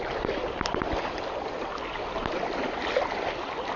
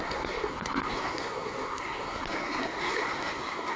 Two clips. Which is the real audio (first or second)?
first